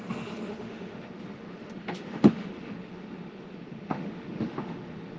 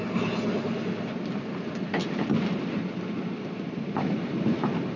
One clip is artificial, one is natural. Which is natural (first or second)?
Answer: second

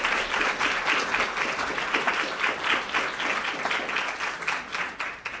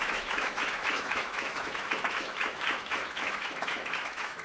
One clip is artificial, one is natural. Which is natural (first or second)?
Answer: first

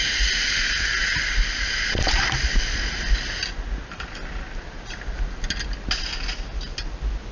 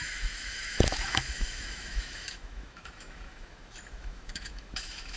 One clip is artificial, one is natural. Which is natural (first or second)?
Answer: first